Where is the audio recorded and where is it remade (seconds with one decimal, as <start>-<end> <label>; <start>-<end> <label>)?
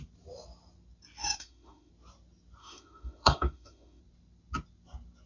0.0-1.2 recorded; 1.2-1.9 remade; 1.9-2.6 recorded; 2.6-4.0 remade; 4.0-5.3 recorded